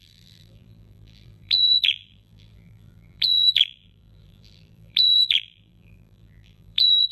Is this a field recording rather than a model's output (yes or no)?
no